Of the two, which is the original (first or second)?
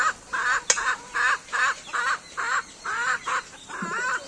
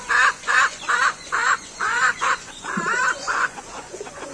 first